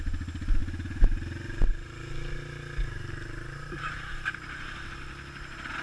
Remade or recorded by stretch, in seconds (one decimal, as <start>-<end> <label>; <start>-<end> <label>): 0.0-5.8 recorded